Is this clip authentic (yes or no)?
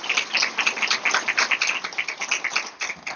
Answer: yes